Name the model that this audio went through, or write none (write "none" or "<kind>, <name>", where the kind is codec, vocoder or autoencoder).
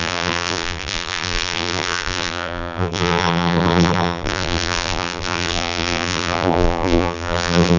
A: vocoder, BigVGAN v2